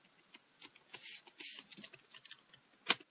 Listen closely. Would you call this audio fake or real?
real